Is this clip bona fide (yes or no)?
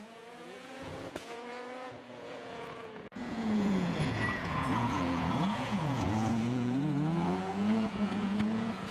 no